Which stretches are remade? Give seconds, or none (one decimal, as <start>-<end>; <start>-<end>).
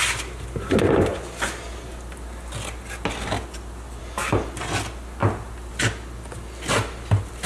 none